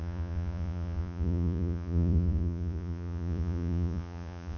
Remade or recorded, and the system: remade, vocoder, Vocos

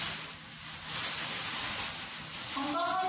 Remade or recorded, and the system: recorded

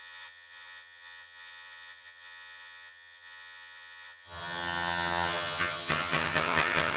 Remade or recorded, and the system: remade, vocoder, HiFi-GAN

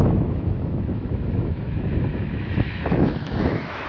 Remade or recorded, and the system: remade, autoencoder, DAC-VAE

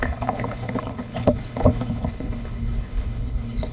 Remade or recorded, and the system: remade, codec, HILCodec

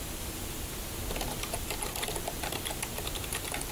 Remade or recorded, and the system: recorded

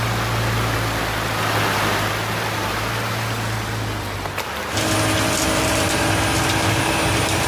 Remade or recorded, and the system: recorded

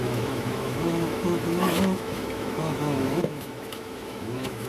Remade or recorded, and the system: remade, autoencoder, DAC-VAE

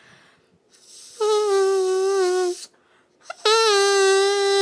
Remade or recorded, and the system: recorded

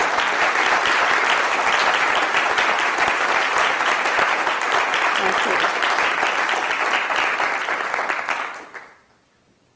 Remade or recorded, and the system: recorded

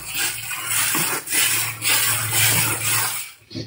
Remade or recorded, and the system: recorded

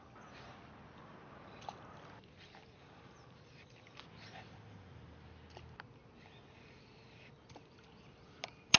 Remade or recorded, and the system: recorded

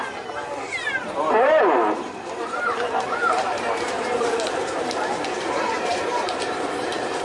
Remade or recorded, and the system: remade, vocoder, BigVGAN v2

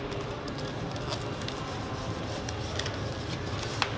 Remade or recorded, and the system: recorded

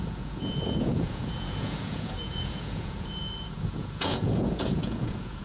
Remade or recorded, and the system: remade, vocoder, Vocos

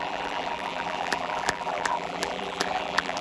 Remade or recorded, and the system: remade, vocoder, BigVGAN v2